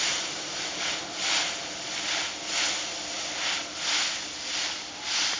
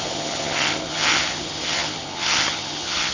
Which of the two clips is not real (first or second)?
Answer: second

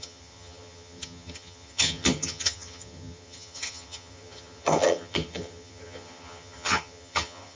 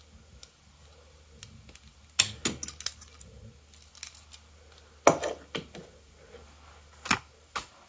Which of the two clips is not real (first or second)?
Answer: first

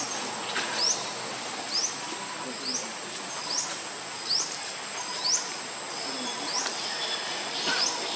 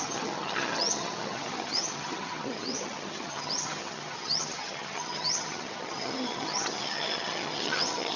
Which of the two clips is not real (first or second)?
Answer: second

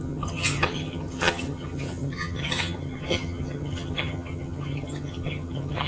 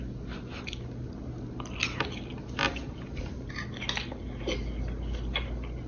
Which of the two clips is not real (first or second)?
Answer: first